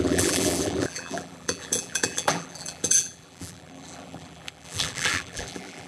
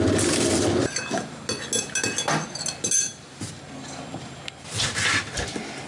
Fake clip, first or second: first